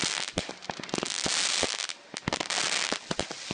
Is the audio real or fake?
real